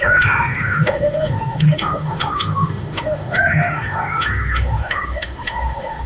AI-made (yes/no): yes